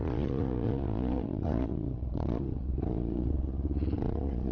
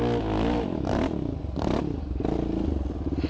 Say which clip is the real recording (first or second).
second